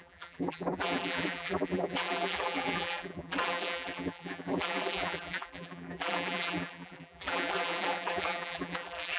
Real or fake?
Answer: fake